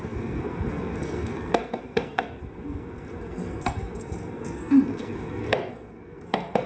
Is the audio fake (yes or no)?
yes